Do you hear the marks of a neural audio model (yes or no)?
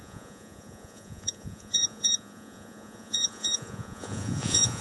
yes